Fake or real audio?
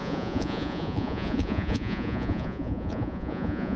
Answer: fake